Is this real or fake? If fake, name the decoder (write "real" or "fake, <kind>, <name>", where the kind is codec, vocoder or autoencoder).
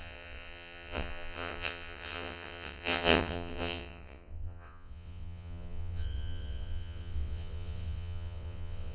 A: fake, vocoder, WaveNeXt